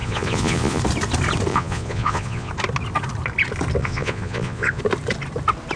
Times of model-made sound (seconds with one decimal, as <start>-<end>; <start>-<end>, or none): 0.0-0.8; 1.5-2.5; 3.8-4.8